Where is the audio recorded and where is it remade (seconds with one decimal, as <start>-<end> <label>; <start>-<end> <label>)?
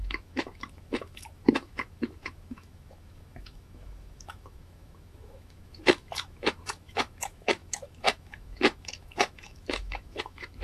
0.0-10.6 remade